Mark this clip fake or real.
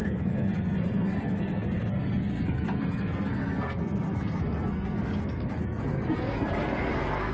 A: fake